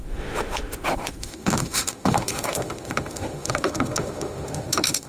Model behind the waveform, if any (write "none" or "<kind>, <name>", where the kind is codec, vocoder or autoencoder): autoencoder, DAC-VAE